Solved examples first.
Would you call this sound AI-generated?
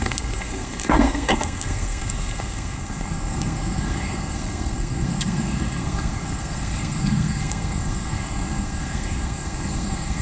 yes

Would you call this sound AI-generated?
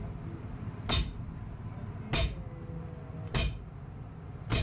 no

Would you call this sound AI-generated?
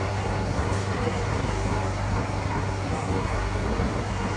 yes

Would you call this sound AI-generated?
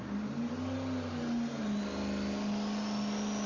no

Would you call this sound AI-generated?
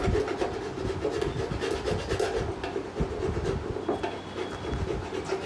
no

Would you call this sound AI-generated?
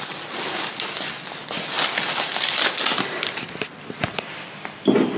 no